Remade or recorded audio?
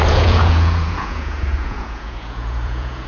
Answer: remade